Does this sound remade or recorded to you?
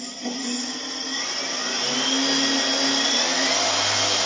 recorded